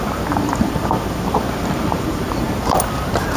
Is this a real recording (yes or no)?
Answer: no